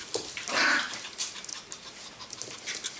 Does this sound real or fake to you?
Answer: fake